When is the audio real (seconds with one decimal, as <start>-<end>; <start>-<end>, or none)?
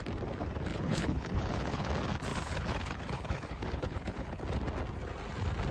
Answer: 0.0-0.7; 1.9-2.3; 4.4-5.7